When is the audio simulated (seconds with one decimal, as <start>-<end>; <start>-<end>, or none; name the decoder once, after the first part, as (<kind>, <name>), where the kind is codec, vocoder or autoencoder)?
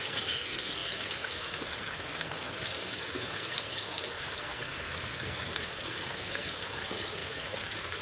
0.0-8.0 (codec, SNAC)